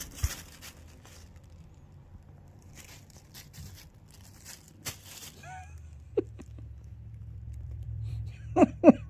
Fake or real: fake